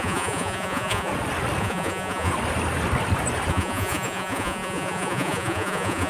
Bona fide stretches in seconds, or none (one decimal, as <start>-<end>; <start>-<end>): 1.1-1.6; 2.3-3.5